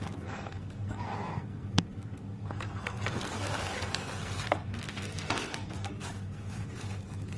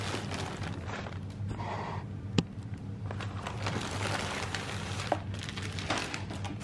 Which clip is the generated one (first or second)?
first